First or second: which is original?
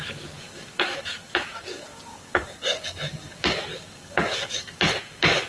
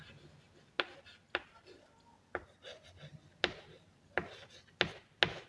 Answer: second